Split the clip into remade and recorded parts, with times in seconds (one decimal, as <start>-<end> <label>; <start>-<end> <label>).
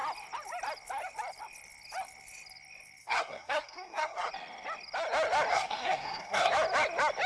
0.0-3.0 recorded; 3.0-4.3 remade; 4.3-5.5 recorded; 5.5-6.5 remade; 6.5-7.3 recorded